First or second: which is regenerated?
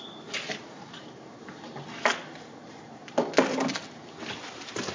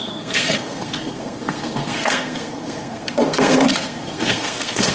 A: second